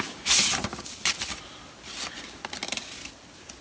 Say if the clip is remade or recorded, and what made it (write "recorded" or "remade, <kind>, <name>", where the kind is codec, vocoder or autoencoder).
recorded